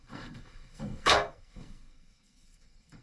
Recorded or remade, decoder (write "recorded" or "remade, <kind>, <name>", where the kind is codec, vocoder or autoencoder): remade, codec, SNAC